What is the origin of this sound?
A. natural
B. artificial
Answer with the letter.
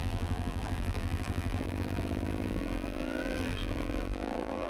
B